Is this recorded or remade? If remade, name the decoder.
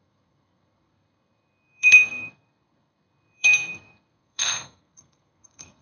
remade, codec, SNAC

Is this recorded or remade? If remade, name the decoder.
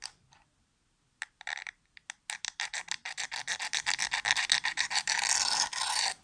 recorded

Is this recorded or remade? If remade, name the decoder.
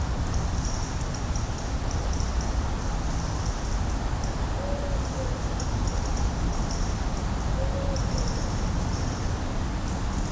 recorded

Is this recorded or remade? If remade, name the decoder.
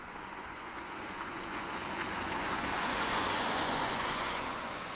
remade, vocoder, Vocos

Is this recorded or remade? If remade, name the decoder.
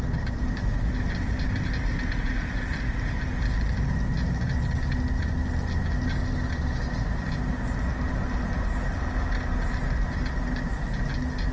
recorded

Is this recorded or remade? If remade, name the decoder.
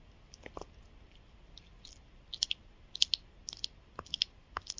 recorded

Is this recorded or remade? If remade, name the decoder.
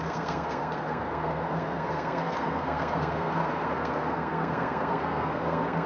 remade, codec, SNAC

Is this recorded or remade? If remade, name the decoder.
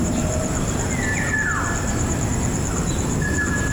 remade, vocoder, BigVGAN v2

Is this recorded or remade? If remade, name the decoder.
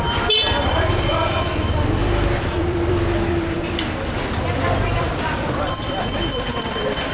remade, vocoder, BigVGAN v2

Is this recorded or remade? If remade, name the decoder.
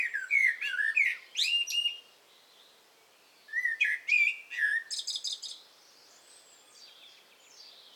recorded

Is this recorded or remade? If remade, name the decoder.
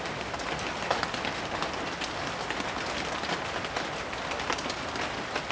recorded